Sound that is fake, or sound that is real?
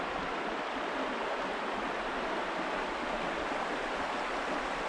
real